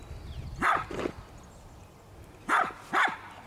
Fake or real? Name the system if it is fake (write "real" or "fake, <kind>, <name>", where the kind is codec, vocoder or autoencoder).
real